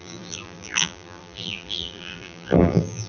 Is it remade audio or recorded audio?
remade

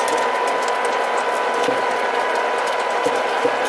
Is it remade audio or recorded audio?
recorded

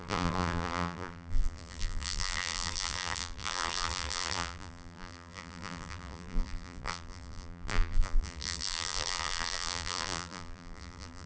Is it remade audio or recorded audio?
remade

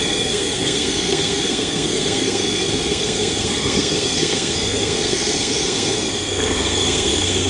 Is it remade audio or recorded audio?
remade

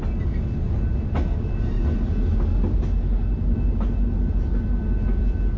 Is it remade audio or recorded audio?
recorded